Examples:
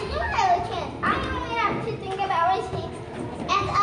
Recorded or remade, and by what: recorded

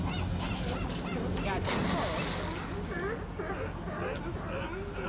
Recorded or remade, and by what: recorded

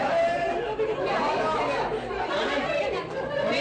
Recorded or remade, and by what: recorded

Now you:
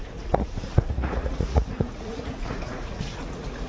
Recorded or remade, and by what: remade, vocoder, Vocos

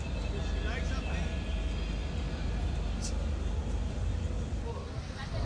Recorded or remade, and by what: recorded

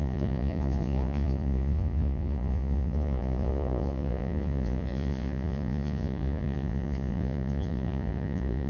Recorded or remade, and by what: remade, vocoder, Vocos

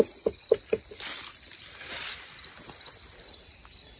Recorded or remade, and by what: recorded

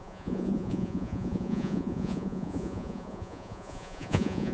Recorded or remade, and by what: remade, vocoder, Vocos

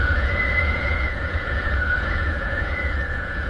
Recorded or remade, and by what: remade, vocoder, Vocos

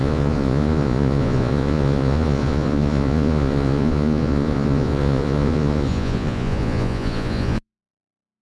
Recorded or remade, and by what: remade, vocoder, Vocos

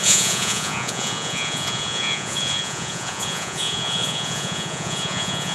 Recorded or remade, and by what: remade, vocoder, Vocos